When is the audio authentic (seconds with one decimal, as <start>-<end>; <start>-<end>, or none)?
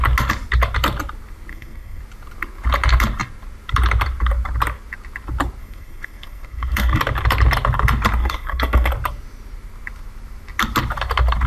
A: 0.0-1.5; 2.0-5.6; 7.0-8.2; 8.9-11.5